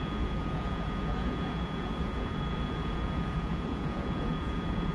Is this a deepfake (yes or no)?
yes